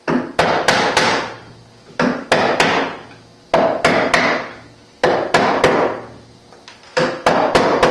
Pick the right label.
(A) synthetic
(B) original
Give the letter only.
B